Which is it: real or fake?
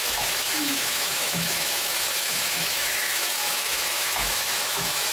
fake